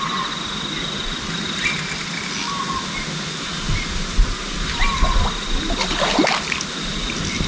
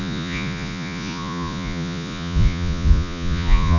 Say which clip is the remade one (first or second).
second